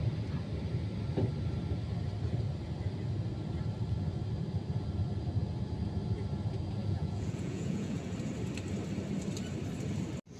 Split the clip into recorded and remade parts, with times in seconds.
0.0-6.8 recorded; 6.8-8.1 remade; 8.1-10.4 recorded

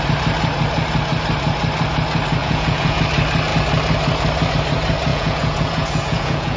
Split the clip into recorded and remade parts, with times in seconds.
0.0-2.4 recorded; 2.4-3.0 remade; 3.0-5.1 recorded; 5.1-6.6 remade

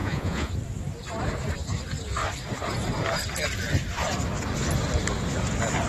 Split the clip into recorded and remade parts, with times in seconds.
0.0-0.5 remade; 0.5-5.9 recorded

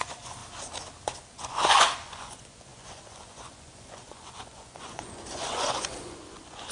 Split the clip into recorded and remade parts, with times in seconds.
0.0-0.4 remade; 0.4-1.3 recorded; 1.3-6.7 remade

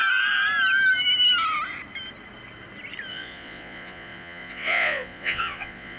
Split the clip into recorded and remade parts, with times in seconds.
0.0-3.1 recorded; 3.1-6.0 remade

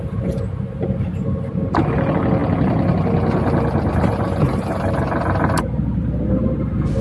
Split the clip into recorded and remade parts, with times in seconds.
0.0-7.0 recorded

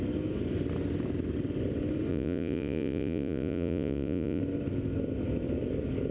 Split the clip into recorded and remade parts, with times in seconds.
0.0-2.1 recorded; 2.1-4.4 remade; 4.4-6.1 recorded